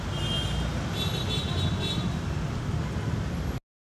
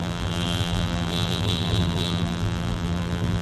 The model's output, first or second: second